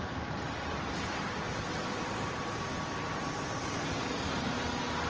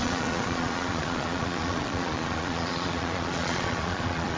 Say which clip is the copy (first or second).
second